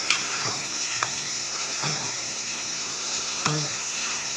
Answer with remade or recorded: remade